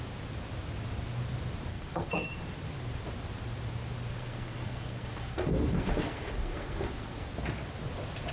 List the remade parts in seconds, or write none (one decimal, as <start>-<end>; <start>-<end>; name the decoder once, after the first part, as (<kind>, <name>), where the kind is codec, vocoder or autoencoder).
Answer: 1.7-2.4 (codec, SNAC); 4.1-7.3